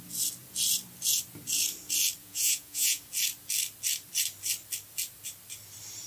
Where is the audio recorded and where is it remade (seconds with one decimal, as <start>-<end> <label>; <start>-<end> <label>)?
0.0-2.2 recorded; 2.2-3.0 remade; 3.0-6.1 recorded